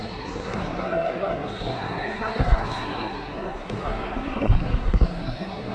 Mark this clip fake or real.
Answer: fake